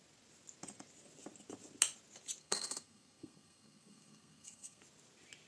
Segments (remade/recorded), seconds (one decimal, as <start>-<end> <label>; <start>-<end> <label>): 0.0-2.4 recorded; 2.4-4.8 remade; 4.8-5.5 recorded